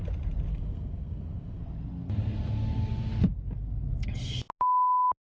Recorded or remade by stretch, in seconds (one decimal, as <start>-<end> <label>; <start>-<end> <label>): 0.0-0.5 recorded; 0.5-1.6 remade; 1.6-5.3 recorded